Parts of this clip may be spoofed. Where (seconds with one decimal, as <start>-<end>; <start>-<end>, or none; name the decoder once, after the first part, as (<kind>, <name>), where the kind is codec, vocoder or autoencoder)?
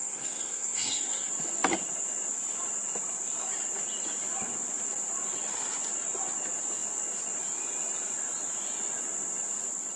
0.0-1.3 (codec, SNAC)